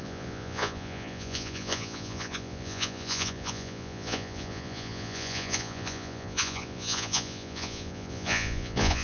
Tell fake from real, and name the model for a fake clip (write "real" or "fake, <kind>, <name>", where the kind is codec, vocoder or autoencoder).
fake, vocoder, Vocos